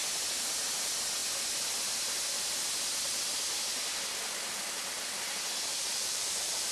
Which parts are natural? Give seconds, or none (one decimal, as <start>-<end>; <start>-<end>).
0.0-5.7

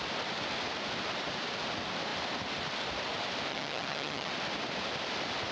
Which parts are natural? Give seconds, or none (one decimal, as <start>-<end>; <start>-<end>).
0.0-3.5; 4.3-5.5

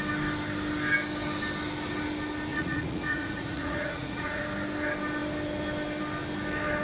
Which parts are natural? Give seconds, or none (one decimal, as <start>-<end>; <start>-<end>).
0.0-2.5; 4.4-6.8

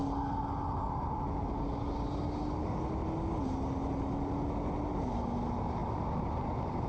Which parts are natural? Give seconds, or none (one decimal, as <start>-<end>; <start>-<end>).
0.0-6.9

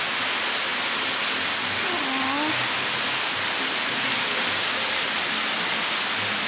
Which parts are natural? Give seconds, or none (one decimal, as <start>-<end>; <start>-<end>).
0.0-6.5

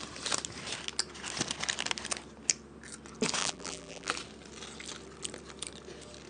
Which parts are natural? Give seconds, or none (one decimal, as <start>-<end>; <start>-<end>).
0.0-3.4; 4.1-6.3

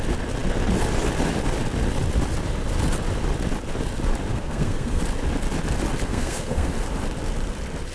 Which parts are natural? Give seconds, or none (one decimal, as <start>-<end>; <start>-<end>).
0.0-4.3; 5.0-6.1; 6.7-7.9